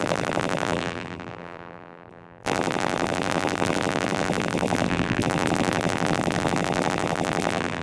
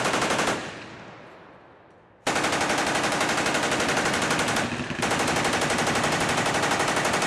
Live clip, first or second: second